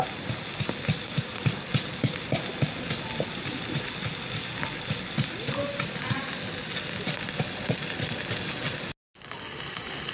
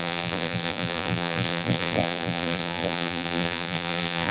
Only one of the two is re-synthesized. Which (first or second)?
second